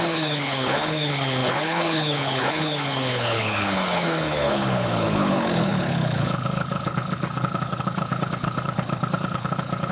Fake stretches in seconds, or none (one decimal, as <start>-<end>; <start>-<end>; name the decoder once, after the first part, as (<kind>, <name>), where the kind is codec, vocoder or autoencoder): 0.0-9.9 (codec, HILCodec)